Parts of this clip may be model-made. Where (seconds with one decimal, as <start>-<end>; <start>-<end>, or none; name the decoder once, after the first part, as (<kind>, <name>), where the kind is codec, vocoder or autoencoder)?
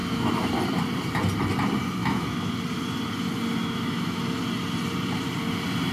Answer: 0.0-0.5 (autoencoder, DAC-VAE); 2.0-2.5; 3.6-4.2